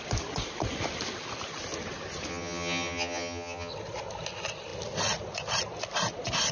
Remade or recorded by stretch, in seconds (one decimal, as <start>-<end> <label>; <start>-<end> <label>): 0.0-2.3 recorded; 2.3-3.7 remade; 3.7-6.5 recorded